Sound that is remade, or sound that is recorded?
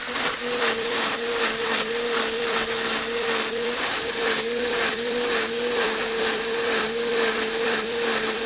remade